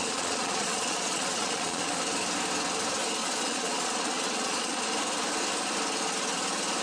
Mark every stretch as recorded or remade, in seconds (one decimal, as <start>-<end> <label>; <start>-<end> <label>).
0.0-2.0 remade; 2.0-3.2 recorded; 3.2-4.8 remade; 4.8-6.8 recorded